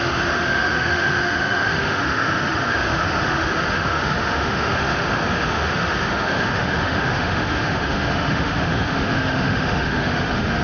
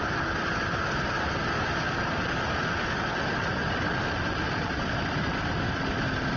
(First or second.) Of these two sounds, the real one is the second